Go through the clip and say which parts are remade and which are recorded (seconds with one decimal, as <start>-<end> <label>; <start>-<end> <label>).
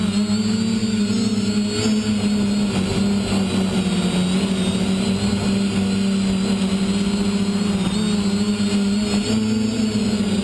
0.0-10.4 recorded